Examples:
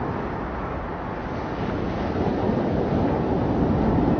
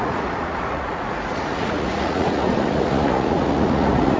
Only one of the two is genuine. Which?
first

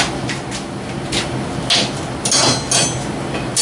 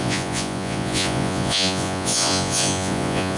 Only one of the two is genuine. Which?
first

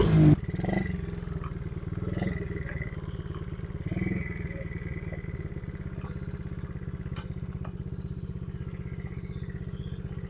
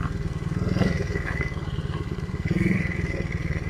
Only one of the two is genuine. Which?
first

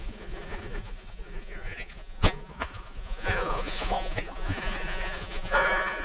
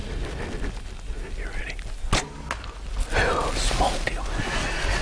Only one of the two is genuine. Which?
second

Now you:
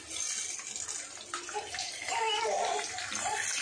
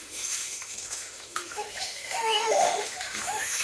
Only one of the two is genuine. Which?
first